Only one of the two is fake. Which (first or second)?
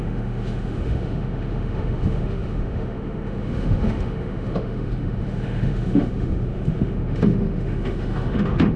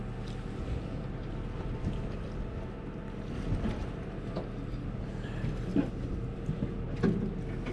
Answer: first